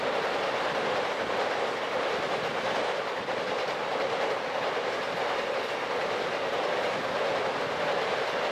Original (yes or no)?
yes